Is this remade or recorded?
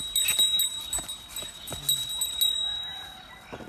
recorded